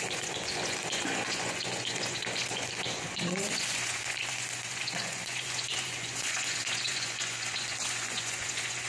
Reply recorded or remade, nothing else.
remade